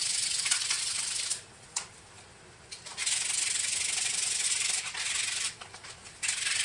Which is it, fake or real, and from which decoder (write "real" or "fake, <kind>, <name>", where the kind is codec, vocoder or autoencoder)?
real